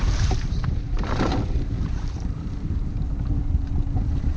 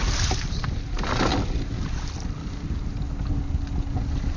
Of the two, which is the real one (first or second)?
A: second